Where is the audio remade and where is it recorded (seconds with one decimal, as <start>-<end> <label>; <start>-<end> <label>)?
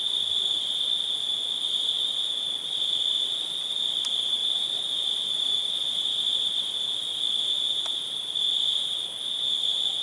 0.0-4.4 recorded; 4.4-5.7 remade; 5.7-7.5 recorded; 7.5-8.1 remade; 8.1-10.0 recorded